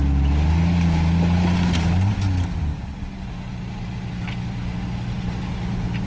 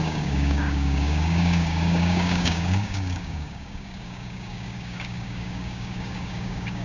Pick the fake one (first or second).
second